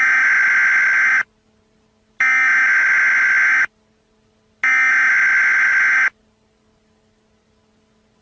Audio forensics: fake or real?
real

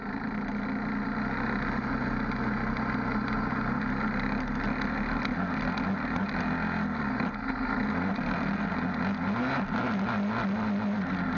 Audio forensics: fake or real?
real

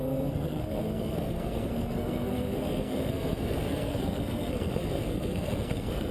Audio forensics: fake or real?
fake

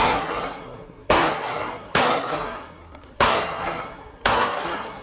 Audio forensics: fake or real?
fake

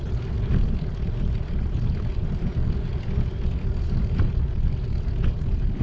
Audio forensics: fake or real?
real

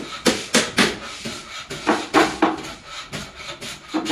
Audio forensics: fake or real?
real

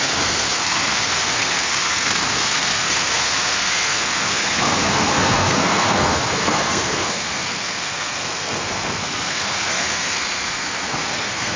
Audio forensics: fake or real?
fake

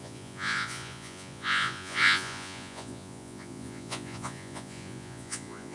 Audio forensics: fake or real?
fake